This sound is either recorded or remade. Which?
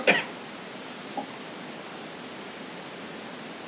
recorded